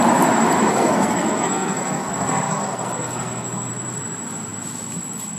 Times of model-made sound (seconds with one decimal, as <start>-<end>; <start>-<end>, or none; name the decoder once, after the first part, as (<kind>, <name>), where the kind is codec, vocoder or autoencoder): 0.7-3.7 (codec, SNAC)